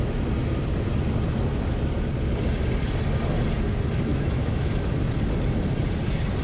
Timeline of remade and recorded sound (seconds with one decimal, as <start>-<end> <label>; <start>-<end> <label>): 0.0-4.1 recorded; 4.1-4.9 remade; 4.9-6.4 recorded